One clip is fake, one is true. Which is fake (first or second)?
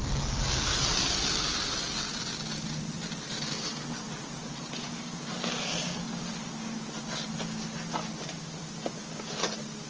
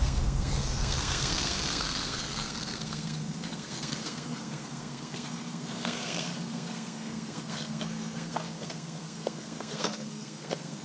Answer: second